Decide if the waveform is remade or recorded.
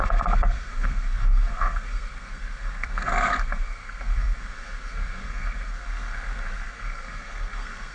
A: remade